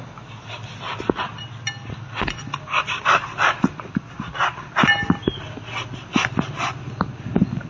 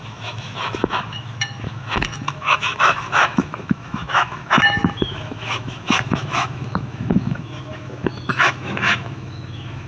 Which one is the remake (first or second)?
second